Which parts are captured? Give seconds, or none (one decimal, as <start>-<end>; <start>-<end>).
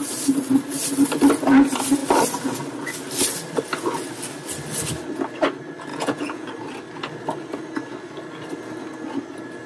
0.0-5.9; 6.5-9.7